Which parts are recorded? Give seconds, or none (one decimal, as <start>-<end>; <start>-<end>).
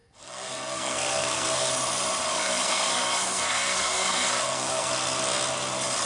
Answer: 1.7-2.3; 4.9-6.1